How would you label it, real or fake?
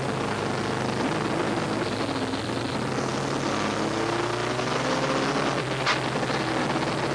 real